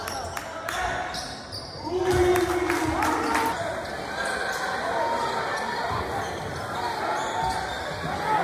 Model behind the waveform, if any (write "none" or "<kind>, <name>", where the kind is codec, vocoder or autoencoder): none